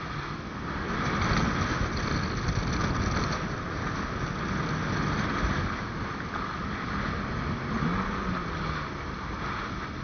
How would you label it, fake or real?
real